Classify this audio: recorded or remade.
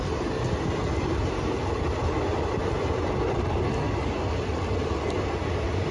recorded